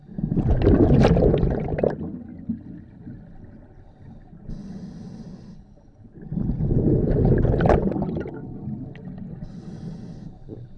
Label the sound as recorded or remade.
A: recorded